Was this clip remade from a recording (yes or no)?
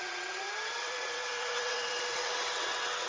yes